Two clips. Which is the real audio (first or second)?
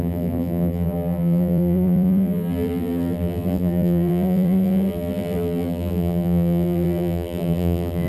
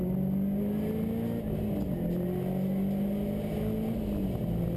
second